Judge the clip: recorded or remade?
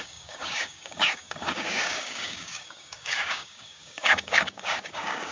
remade